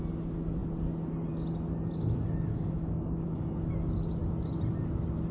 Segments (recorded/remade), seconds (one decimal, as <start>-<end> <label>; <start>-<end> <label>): 0.0-2.5 recorded; 2.5-3.5 remade; 3.5-5.3 recorded